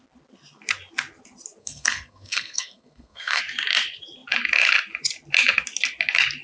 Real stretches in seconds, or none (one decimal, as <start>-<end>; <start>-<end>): 0.0-1.6; 3.4-6.4